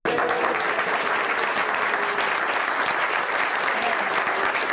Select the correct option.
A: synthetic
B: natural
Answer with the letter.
B